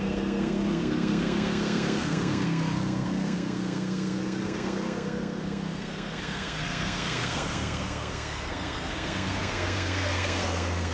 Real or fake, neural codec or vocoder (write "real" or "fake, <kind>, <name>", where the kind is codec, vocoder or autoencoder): fake, codec, SNAC